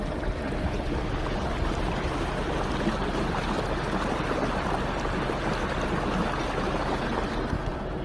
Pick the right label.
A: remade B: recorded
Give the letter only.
B